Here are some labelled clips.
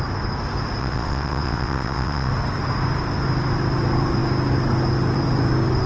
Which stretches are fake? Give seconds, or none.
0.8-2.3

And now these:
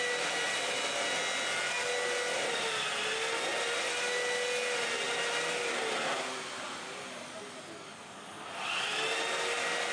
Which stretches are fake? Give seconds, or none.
none